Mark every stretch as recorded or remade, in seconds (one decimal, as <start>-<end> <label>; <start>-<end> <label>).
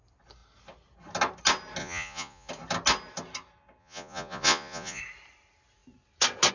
0.0-1.8 recorded; 1.8-2.5 remade; 2.5-3.8 recorded; 3.8-5.0 remade; 5.0-6.5 recorded